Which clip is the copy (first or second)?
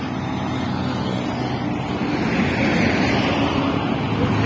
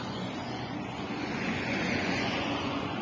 second